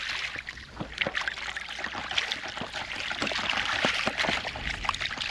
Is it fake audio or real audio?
real